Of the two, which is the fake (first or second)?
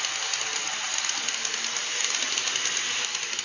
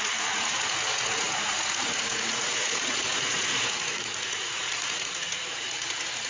second